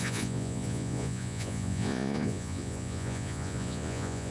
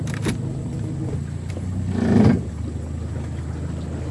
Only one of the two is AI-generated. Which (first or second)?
first